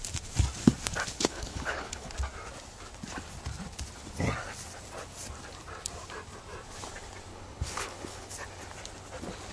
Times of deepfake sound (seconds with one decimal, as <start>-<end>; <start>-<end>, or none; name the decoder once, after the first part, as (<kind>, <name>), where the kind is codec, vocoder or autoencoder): 1.3-2.1 (codec, HILCodec); 7.3-8.3